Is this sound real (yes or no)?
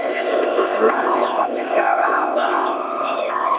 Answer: no